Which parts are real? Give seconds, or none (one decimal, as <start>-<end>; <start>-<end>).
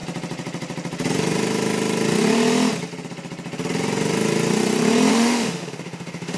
0.0-5.1